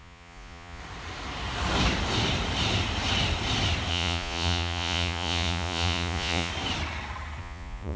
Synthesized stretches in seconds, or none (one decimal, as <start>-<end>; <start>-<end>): 0.0-0.8; 3.9-6.5; 7.4-8.0